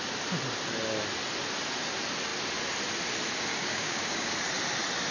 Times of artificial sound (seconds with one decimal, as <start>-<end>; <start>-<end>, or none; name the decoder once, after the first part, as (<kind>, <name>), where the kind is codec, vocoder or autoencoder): 3.5-4.3 (codec, DAC)